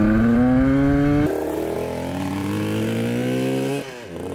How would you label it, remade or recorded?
recorded